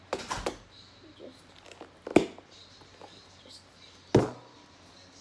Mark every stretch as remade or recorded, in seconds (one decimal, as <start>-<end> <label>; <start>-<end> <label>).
0.0-5.2 recorded